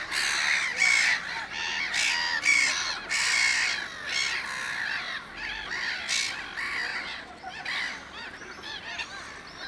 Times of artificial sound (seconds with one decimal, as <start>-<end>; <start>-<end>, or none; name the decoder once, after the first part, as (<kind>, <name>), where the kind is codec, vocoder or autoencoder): 6.9-7.6 (vocoder, WaveNeXt)